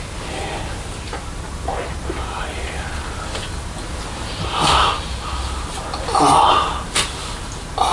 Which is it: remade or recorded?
recorded